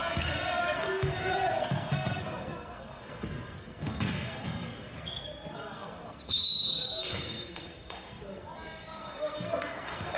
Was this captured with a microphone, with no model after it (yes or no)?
no